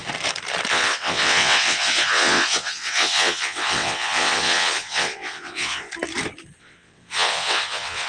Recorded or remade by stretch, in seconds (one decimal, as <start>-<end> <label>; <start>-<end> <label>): 0.0-0.7 recorded; 0.7-5.9 remade; 5.9-6.6 recorded; 6.6-8.1 remade